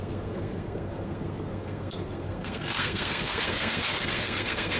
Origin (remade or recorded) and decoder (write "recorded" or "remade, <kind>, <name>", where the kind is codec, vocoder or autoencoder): remade, codec, SNAC